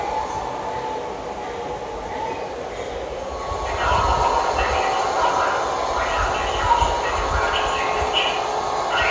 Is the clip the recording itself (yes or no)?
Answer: yes